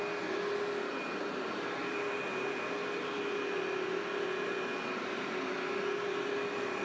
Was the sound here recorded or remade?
recorded